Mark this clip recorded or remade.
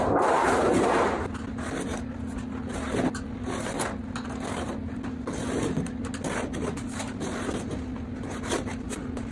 recorded